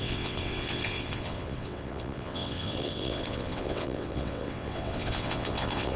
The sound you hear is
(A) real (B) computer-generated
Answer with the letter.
B